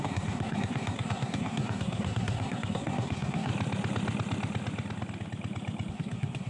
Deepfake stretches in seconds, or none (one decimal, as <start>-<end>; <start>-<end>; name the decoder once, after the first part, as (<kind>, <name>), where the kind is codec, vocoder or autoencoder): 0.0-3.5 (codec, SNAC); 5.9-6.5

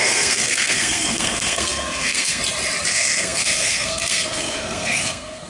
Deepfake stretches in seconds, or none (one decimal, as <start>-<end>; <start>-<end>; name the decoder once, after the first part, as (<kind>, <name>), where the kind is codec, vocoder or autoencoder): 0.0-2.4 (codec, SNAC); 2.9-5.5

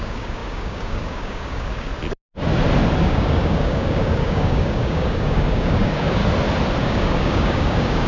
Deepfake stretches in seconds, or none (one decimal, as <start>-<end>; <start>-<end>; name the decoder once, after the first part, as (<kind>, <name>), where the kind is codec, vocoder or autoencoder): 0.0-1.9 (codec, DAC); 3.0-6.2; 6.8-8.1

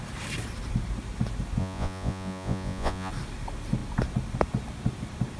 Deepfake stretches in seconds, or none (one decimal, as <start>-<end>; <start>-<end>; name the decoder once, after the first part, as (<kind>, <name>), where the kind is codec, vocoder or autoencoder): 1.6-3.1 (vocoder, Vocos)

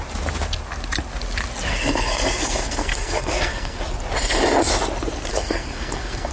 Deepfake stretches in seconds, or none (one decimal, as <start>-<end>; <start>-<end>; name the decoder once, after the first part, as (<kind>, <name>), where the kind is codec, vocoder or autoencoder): 1.7-3.8 (codec, SNAC); 5.3-6.3